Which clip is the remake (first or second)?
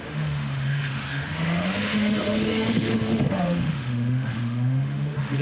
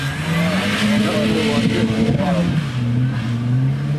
first